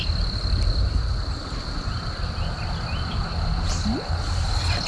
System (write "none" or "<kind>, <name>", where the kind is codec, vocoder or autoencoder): none